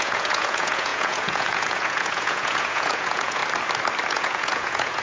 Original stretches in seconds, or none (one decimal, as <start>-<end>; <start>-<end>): 3.4-4.1